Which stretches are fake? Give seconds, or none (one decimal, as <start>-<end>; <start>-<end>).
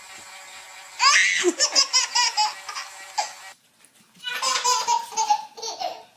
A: none